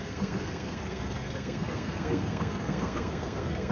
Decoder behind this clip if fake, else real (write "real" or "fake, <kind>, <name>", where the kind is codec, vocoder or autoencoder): fake, codec, SNAC